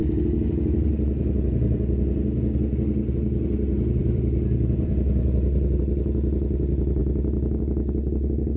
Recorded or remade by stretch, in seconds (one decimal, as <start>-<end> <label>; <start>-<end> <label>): 0.0-4.0 recorded; 4.0-5.8 remade; 5.8-7.0 recorded; 7.0-7.6 remade; 7.6-8.6 recorded